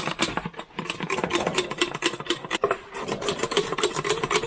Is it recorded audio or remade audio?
recorded